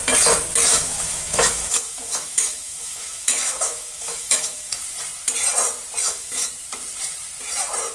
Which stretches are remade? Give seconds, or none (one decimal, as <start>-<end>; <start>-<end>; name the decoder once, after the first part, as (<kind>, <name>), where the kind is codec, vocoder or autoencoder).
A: 0.7-4.8 (autoencoder, DAC-VAE); 6.0-6.5